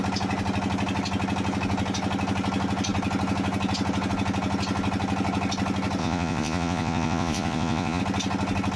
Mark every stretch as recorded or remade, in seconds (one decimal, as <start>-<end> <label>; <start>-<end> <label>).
0.0-6.0 recorded; 6.0-8.0 remade; 8.0-8.8 recorded